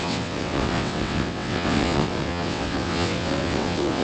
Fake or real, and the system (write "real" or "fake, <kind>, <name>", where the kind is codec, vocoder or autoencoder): fake, vocoder, WaveNeXt